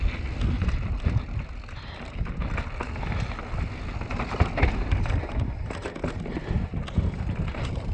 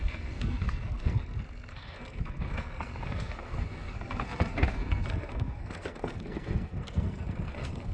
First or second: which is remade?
second